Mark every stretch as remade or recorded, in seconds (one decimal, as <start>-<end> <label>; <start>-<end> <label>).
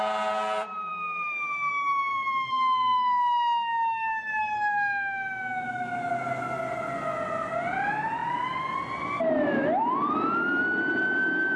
0.0-0.9 recorded; 0.9-1.7 remade; 1.7-2.1 recorded; 2.1-6.1 remade; 6.1-11.6 recorded